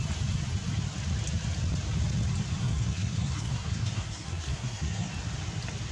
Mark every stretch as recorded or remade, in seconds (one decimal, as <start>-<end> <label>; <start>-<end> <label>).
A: 0.0-2.6 recorded; 2.6-5.1 remade; 5.1-5.9 recorded